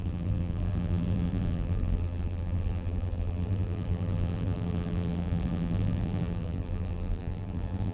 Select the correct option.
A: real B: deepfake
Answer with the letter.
B